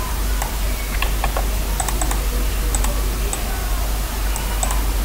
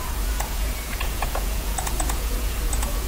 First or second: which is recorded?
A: first